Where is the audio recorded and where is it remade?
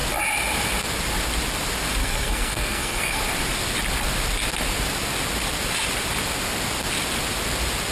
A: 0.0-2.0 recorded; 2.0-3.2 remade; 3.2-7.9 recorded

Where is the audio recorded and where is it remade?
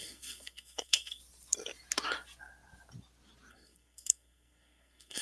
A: 0.0-1.2 remade; 1.2-3.5 recorded; 3.5-5.2 remade